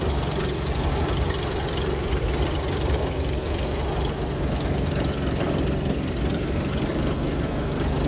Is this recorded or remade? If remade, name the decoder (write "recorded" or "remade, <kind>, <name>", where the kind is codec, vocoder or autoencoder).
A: remade, vocoder, BigVGAN v2